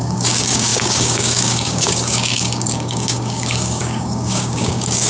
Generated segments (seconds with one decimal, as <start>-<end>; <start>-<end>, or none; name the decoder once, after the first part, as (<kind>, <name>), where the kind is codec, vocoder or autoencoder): 0.0-5.1 (codec, DAC)